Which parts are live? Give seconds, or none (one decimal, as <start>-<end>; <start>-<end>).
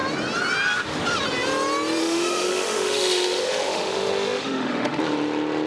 0.0-2.0; 5.0-5.7